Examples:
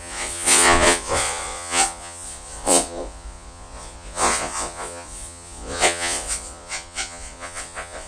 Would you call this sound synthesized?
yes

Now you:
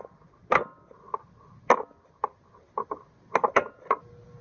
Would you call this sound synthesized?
no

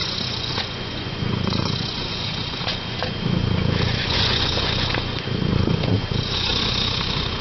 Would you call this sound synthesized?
yes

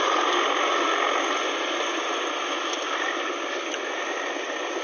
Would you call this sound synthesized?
no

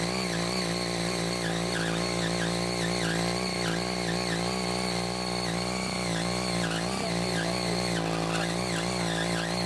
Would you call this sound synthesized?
no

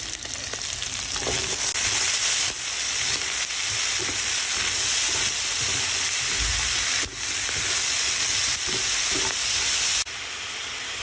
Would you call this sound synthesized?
no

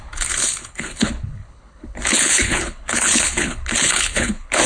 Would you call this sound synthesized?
yes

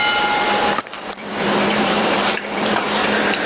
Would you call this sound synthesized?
yes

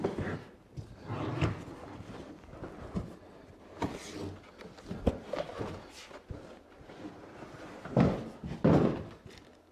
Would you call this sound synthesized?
no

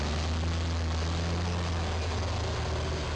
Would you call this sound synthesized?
no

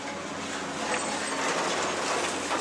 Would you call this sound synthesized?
no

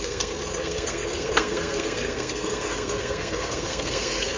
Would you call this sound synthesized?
yes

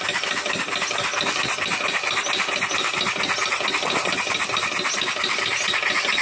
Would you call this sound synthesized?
no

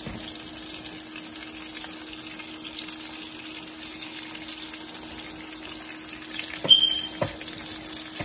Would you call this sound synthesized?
no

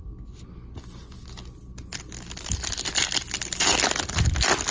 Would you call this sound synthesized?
no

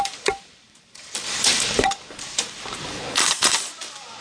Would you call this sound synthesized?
yes